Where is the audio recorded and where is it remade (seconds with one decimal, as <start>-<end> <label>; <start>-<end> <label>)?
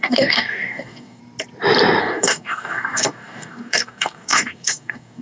0.0-1.2 remade; 1.2-2.0 recorded; 2.0-5.2 remade